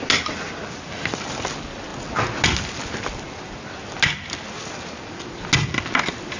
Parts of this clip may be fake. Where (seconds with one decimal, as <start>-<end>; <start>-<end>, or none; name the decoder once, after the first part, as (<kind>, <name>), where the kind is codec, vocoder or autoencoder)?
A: none